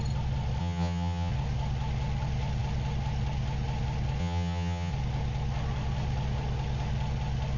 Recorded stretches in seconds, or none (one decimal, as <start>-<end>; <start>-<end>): 0.0-0.6; 1.3-4.2; 4.9-7.6